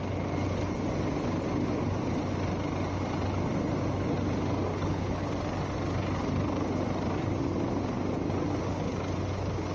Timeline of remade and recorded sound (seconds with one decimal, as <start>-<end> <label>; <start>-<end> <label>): 0.0-4.7 recorded; 4.7-5.3 remade; 5.3-9.7 recorded